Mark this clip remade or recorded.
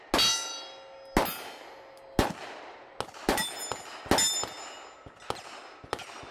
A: recorded